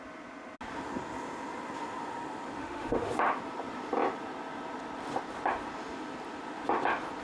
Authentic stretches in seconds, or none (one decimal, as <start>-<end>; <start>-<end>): 0.0-2.6; 3.1-7.2